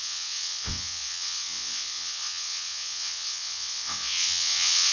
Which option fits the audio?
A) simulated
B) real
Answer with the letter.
A